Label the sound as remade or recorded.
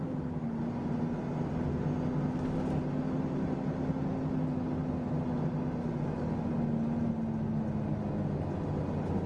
recorded